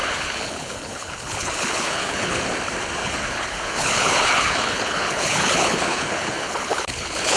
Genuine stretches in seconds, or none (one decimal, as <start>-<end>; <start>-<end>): 2.4-3.0